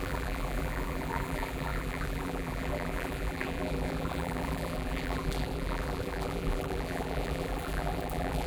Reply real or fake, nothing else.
fake